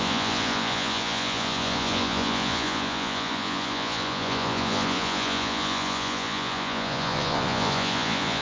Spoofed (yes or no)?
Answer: yes